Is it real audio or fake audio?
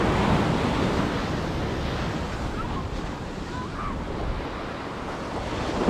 real